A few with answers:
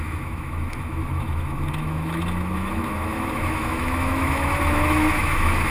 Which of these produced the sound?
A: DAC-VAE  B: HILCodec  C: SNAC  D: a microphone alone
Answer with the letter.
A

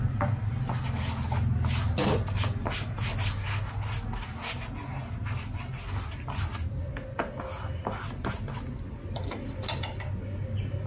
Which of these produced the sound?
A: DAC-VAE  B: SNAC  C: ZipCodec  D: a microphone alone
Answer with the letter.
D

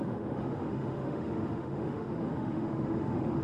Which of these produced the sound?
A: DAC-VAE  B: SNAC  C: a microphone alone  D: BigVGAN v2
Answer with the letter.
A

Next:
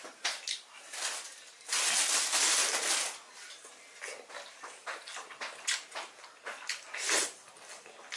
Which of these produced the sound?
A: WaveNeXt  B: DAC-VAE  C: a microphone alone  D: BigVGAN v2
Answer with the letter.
C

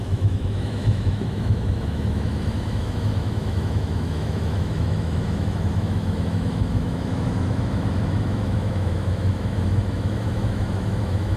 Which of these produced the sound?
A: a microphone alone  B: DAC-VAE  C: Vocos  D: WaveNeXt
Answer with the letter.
B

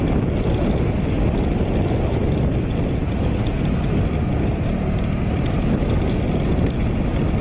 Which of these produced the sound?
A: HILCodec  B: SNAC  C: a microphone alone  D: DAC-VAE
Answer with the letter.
C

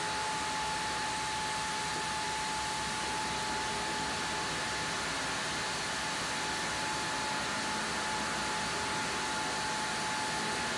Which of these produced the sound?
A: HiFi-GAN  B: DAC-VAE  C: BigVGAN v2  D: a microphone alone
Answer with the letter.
D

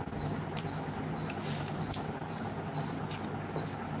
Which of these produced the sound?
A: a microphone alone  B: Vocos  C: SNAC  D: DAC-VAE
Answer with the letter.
A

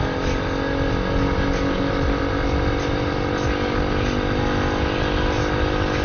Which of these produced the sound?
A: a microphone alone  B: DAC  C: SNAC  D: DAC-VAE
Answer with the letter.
A